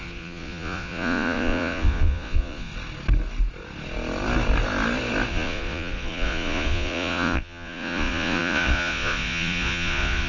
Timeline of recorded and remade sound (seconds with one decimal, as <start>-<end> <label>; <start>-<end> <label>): 0.0-2.7 remade; 2.7-5.3 recorded; 5.3-10.3 remade